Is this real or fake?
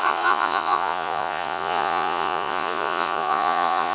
fake